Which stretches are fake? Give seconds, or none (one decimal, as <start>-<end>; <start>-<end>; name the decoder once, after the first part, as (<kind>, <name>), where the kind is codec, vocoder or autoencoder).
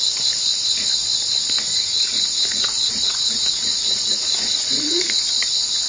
1.7-5.2 (vocoder, Vocos)